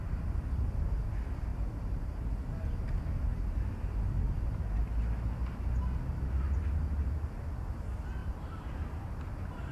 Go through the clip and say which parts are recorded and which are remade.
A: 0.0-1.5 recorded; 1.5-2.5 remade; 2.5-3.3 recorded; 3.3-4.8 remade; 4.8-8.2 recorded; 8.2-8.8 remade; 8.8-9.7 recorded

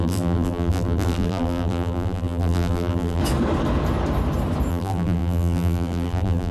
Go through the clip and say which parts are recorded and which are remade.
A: 0.0-3.2 remade; 3.2-4.7 recorded; 4.7-6.5 remade

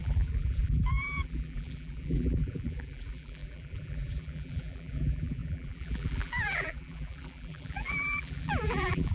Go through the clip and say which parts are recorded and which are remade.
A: 0.0-9.1 remade

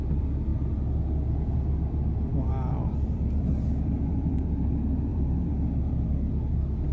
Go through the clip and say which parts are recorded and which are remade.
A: 0.0-2.3 recorded; 2.3-4.5 remade; 4.5-5.1 recorded; 5.1-6.3 remade; 6.3-6.9 recorded

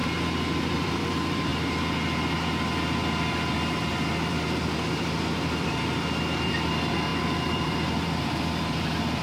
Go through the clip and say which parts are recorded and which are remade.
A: 0.0-0.6 recorded; 0.6-1.5 remade; 1.5-4.3 recorded; 4.3-9.2 remade

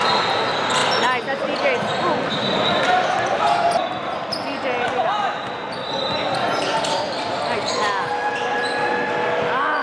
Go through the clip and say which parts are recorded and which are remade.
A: 0.0-9.8 recorded

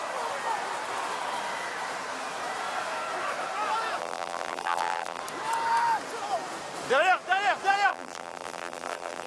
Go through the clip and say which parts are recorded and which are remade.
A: 0.0-4.0 recorded; 4.0-5.2 remade; 5.2-7.9 recorded; 7.9-9.3 remade